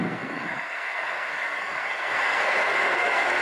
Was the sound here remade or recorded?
remade